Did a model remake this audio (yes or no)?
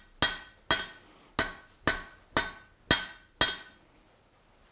no